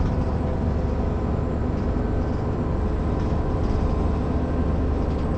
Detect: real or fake real